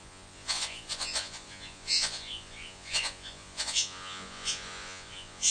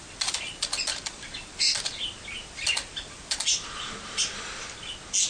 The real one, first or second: second